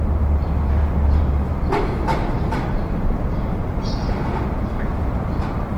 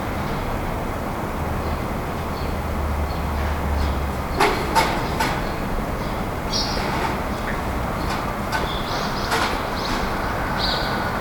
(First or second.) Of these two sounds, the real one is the second